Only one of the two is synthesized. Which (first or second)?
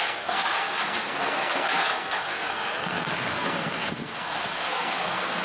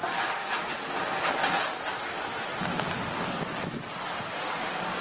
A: first